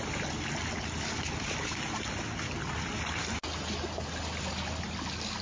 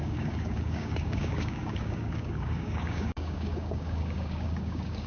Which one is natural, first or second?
first